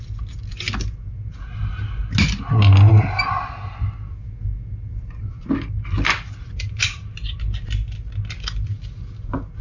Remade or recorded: recorded